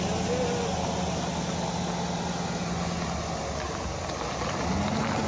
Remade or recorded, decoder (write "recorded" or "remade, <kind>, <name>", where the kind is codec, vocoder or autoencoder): recorded